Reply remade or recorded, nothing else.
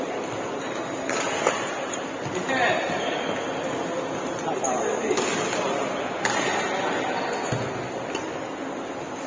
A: recorded